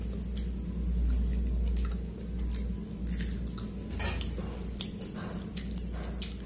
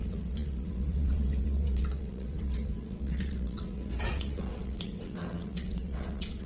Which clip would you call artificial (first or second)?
second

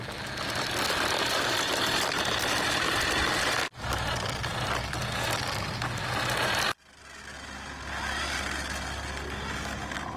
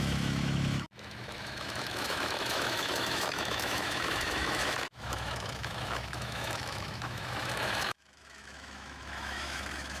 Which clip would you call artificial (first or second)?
second